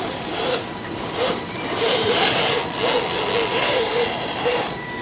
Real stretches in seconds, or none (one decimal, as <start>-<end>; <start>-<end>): 2.6-3.5